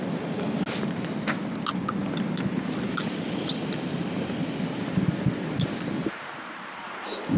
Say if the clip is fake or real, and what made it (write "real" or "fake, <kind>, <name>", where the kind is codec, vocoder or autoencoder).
real